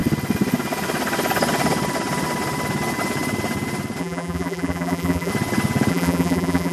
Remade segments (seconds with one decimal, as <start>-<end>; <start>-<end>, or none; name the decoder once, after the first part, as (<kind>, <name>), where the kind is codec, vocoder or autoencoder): 4.0-5.3 (vocoder, BigVGAN v2); 5.9-6.7